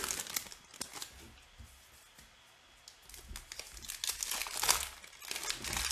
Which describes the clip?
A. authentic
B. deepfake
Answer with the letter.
A